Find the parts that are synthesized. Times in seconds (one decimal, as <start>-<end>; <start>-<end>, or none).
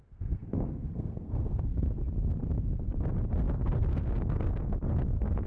0.0-2.0; 3.3-5.5